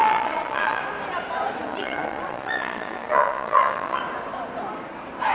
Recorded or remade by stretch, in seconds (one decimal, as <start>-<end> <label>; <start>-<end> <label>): 0.0-0.8 remade; 0.8-1.6 recorded; 1.6-4.0 remade; 4.0-5.3 recorded